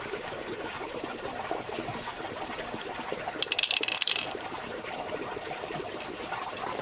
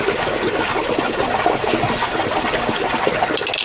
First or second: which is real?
second